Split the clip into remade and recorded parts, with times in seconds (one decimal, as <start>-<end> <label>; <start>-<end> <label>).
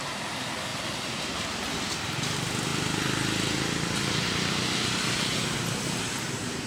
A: 0.0-0.7 recorded; 0.7-2.2 remade; 2.2-6.7 recorded